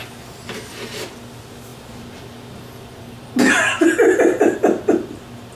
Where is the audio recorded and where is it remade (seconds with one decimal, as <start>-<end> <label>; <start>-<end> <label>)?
0.0-5.6 recorded